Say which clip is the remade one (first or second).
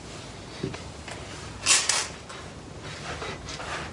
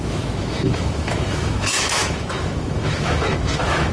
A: second